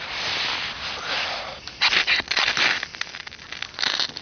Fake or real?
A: real